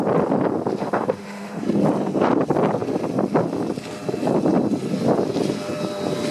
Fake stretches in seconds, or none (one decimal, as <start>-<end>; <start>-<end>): 0.8-1.6